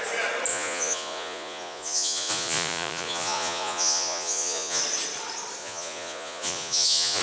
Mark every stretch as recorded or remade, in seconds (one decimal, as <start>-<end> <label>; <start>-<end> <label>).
0.0-0.5 recorded; 0.5-4.8 remade; 4.8-5.6 recorded; 5.6-7.2 remade